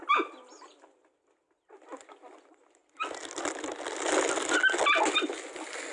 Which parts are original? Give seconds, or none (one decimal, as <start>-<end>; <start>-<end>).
0.0-5.9